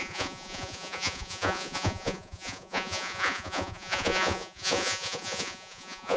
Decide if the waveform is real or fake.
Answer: fake